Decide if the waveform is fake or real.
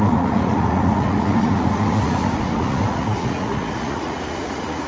fake